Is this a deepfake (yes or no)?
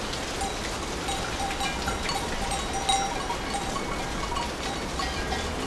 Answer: no